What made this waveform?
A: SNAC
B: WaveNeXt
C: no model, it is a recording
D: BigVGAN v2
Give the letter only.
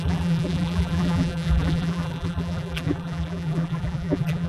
D